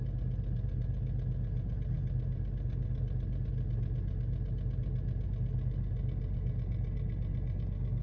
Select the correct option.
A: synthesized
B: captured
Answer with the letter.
B